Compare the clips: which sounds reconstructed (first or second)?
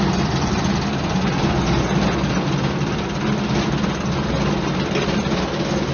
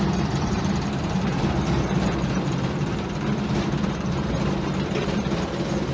second